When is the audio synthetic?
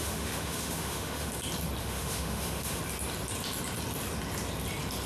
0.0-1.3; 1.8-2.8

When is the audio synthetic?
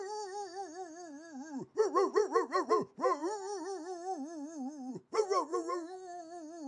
none